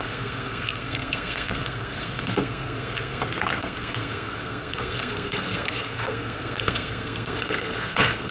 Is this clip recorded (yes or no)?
no